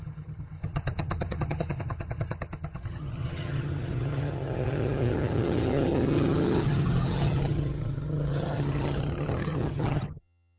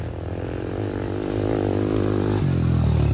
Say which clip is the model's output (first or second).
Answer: first